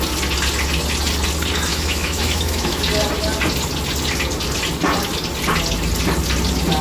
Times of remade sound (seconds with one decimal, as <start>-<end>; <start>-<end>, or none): 1.7-2.8